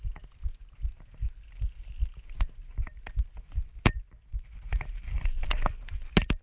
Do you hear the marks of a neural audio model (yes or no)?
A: no